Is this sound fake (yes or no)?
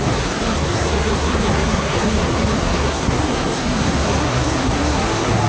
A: yes